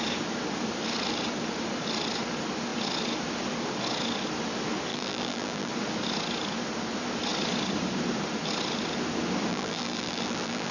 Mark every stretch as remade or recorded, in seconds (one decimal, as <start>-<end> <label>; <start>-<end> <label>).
0.0-4.9 recorded; 4.9-5.7 remade; 5.7-9.5 recorded; 9.5-10.7 remade